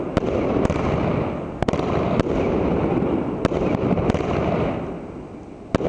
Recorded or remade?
recorded